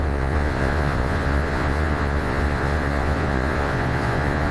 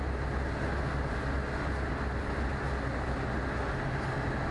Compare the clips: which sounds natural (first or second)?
second